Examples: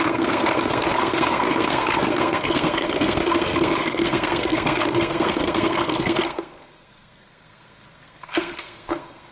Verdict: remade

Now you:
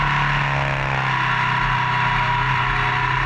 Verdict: recorded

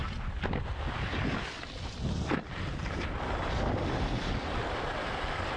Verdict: recorded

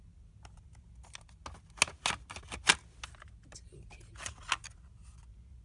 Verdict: recorded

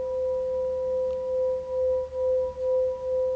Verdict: recorded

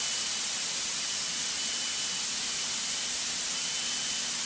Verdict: recorded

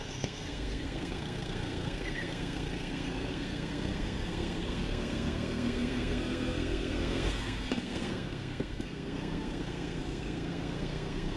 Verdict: remade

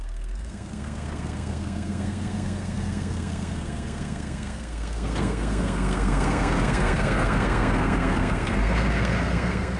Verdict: remade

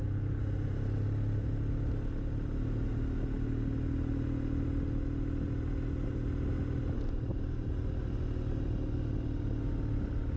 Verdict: recorded